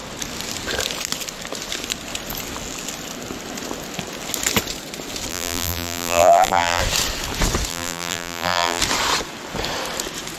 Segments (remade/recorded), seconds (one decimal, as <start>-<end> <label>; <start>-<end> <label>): 0.0-5.3 recorded; 5.3-6.8 remade; 6.8-7.7 recorded; 7.7-8.8 remade; 8.8-10.4 recorded